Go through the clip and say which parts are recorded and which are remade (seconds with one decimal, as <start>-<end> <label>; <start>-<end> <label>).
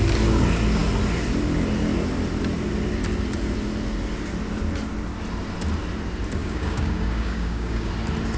0.0-6.4 recorded; 6.4-7.9 remade; 7.9-8.4 recorded